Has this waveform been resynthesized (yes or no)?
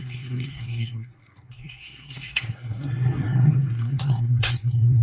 yes